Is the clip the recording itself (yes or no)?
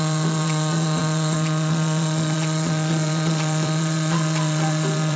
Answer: no